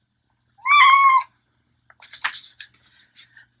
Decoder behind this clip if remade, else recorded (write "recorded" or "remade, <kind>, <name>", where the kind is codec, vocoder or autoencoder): recorded